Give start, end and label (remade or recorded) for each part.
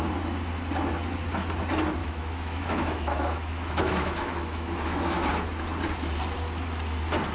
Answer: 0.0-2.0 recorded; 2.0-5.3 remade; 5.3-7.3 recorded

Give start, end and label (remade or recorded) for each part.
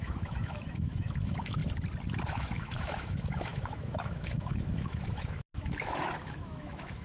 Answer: 0.0-1.6 remade; 1.6-2.3 recorded; 2.3-7.0 remade